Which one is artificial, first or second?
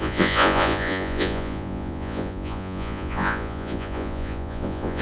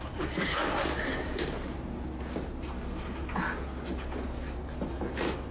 first